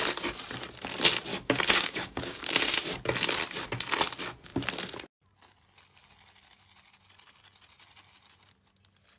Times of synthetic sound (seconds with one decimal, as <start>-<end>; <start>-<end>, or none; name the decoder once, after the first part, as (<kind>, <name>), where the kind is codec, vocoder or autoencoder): 1.3-2.5 (codec, DAC)